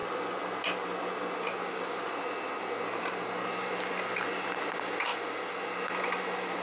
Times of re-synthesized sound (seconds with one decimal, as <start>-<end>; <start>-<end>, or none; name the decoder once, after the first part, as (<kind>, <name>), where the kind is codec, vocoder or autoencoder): none